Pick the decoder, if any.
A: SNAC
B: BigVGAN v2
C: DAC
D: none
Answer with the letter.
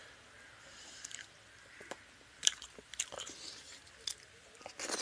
D